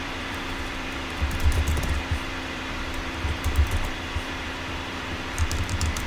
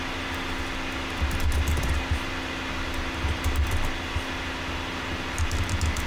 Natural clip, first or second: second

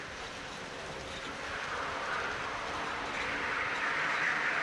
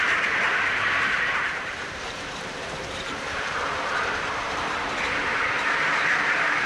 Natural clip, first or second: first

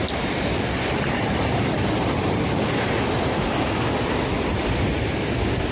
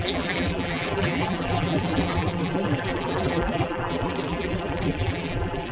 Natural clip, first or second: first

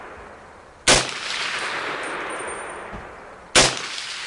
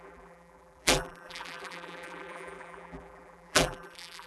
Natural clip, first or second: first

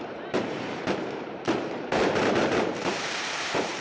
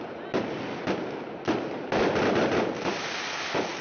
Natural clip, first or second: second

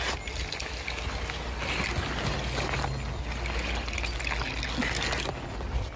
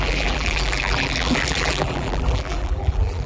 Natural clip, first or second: first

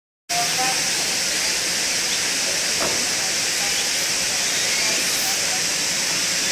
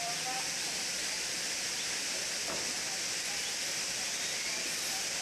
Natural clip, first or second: first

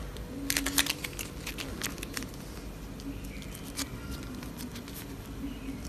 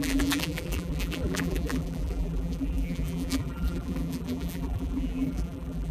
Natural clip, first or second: first